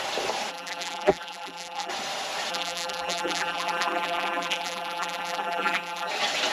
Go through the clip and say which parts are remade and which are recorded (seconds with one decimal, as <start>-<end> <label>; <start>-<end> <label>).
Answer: 0.0-0.5 recorded; 0.5-1.9 remade; 1.9-2.5 recorded; 2.5-6.1 remade; 6.1-6.5 recorded